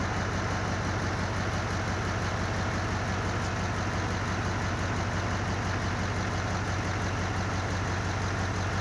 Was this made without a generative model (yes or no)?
yes